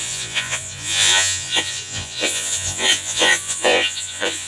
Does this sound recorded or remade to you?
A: remade